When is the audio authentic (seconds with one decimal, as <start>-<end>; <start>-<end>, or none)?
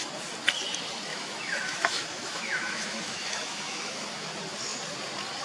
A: 0.0-1.1; 4.3-5.4